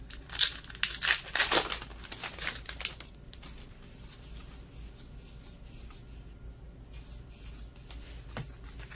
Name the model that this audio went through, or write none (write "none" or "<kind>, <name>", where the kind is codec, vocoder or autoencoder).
none